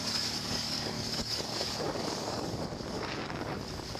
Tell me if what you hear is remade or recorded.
remade